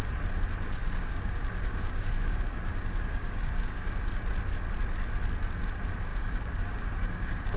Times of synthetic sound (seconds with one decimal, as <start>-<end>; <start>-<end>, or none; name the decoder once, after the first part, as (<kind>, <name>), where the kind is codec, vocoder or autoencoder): 0.8-3.9 (codec, DAC); 6.1-7.6